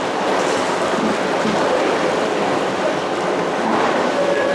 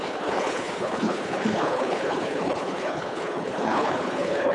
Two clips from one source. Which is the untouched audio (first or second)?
first